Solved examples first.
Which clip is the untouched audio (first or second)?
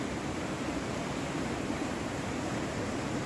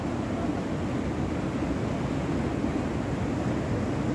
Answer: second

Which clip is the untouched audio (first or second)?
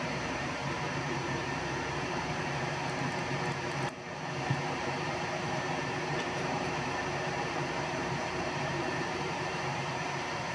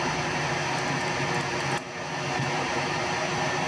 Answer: second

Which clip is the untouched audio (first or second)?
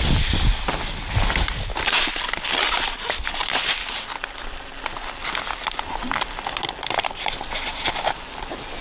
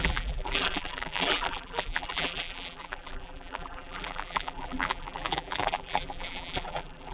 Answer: first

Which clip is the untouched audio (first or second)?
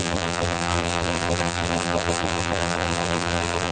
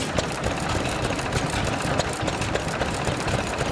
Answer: second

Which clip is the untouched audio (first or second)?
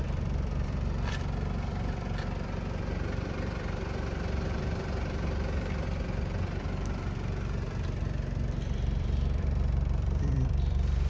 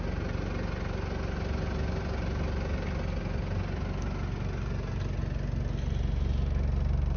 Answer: second